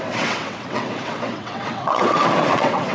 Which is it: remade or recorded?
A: remade